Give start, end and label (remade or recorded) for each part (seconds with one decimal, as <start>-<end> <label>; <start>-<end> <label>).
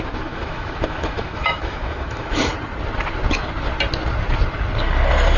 0.0-2.5 remade; 2.5-5.4 recorded